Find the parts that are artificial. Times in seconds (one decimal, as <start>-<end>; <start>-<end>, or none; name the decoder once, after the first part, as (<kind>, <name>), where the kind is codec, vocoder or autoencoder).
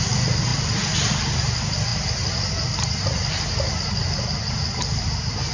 none